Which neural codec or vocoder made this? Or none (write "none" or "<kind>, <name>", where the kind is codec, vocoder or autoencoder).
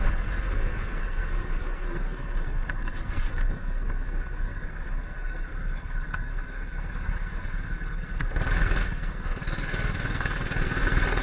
codec, SNAC